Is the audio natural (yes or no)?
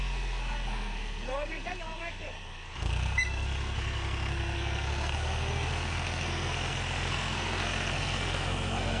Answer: no